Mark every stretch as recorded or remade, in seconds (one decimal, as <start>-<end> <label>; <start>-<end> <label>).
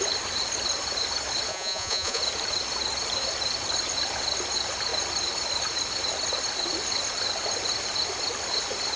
0.0-1.5 recorded; 1.5-2.2 remade; 2.2-9.0 recorded